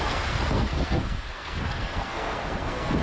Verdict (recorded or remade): remade